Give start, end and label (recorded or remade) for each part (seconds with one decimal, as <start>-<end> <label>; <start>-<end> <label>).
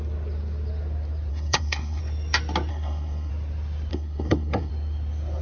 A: 0.0-1.3 recorded; 1.3-2.0 remade; 2.0-2.7 recorded; 2.7-3.3 remade; 3.3-3.9 recorded; 3.9-4.7 remade; 4.7-5.4 recorded